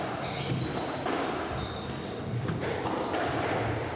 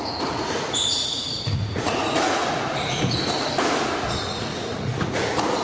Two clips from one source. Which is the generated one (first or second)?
second